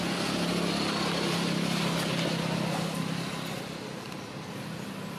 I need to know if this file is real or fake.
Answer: real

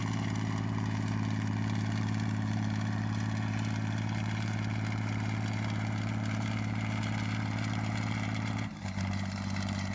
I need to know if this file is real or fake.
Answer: fake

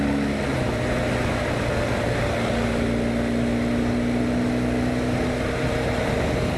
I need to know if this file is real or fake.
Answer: real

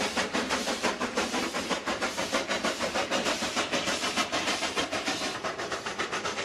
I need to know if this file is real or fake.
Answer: fake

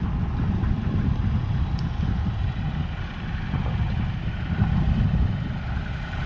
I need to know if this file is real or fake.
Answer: real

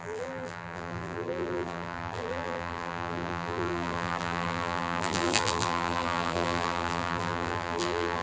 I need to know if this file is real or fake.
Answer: fake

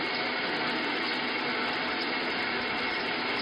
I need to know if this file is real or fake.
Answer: real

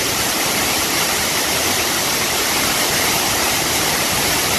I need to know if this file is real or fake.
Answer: fake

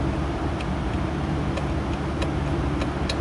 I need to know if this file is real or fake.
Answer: real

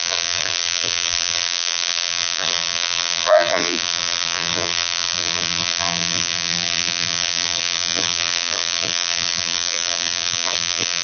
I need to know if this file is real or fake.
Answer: fake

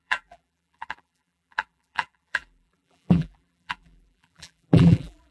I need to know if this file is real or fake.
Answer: fake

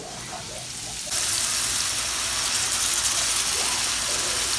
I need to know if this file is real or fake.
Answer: real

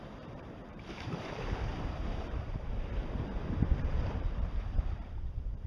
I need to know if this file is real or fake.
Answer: fake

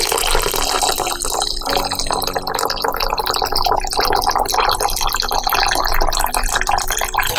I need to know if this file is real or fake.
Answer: real